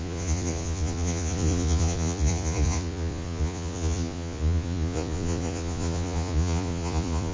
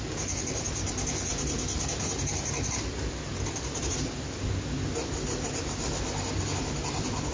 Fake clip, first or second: first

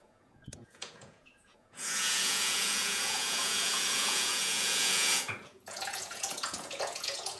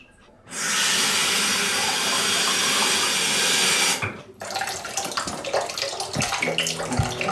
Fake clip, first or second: first